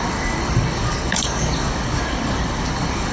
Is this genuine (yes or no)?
no